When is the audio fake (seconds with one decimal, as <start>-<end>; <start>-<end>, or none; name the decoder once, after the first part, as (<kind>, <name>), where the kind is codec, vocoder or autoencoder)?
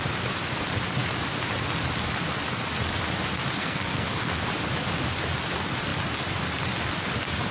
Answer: 3.6-4.4 (codec, SNAC)